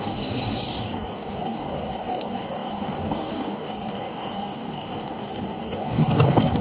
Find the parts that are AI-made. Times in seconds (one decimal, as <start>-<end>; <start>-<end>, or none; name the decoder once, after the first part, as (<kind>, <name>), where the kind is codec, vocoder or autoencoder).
0.0-6.6 (codec, DAC)